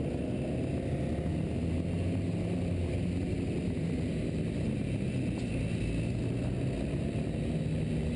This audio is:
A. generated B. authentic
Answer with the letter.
B